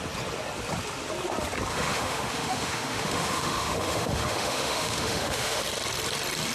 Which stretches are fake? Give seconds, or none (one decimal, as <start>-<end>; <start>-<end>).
1.7-5.6